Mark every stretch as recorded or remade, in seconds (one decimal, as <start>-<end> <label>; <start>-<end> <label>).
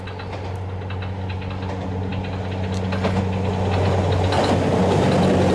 0.0-5.5 recorded